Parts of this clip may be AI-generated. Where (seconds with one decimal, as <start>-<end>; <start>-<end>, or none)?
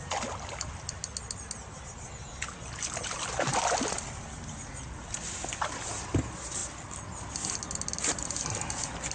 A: none